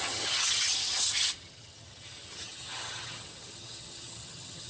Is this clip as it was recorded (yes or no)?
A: no